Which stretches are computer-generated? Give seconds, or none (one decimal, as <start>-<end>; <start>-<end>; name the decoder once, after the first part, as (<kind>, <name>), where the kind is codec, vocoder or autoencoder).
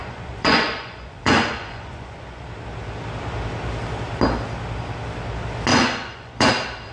0.0-2.4 (vocoder, Vocos); 5.7-6.5